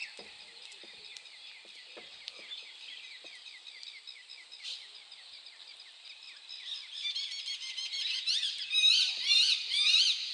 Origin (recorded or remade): remade